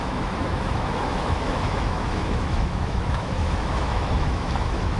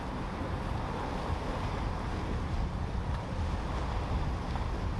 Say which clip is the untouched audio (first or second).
second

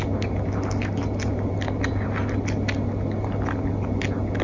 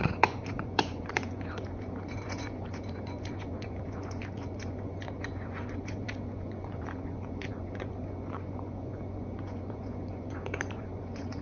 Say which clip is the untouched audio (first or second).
first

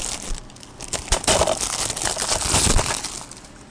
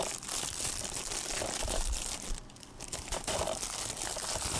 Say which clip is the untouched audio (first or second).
first